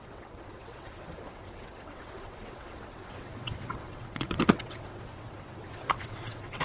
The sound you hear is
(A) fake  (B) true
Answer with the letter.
A